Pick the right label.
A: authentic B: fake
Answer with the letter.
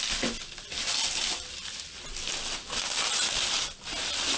A